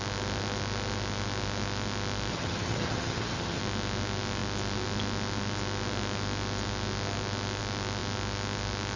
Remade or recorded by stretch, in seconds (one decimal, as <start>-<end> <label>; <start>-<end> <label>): 0.0-2.3 recorded; 2.3-3.6 remade; 3.6-9.0 recorded